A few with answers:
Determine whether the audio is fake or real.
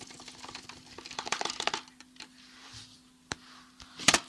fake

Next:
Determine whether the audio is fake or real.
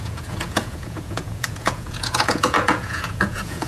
fake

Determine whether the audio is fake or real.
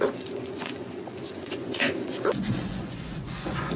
fake